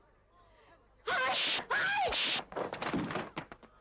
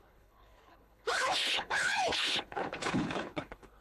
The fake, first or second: second